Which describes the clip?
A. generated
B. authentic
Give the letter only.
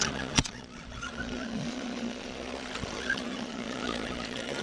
A